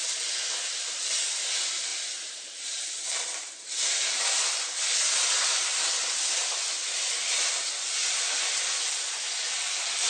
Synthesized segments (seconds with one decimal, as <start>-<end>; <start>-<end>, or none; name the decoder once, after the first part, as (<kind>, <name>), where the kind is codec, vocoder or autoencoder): none